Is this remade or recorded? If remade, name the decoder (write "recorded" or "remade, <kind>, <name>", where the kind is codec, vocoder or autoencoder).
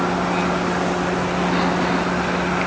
recorded